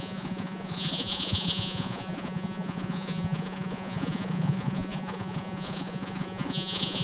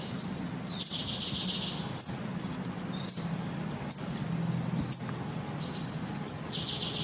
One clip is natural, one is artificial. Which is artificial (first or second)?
first